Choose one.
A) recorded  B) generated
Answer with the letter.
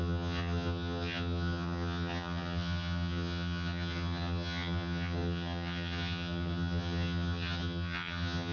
B